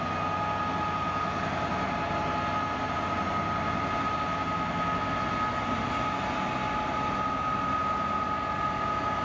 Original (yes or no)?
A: yes